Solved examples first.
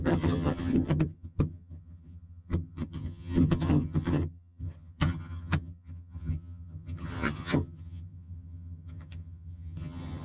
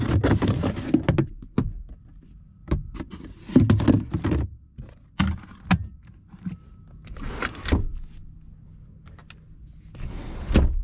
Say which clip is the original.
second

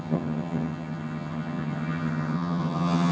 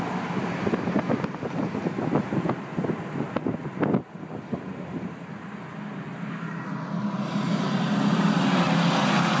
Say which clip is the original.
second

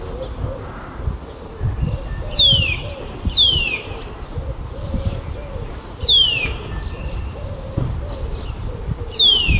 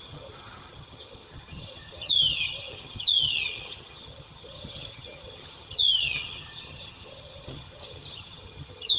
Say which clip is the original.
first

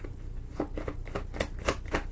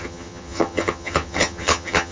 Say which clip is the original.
first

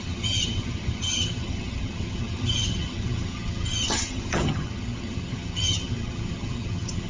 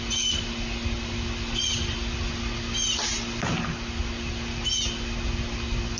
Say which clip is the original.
second